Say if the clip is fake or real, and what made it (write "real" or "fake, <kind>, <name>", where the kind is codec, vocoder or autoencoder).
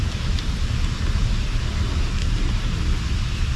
real